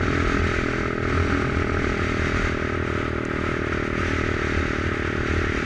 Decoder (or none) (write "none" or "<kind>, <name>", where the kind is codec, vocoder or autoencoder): none